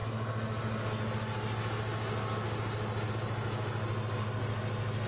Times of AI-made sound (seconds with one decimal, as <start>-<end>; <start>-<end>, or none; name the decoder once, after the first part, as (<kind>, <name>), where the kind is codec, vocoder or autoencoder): none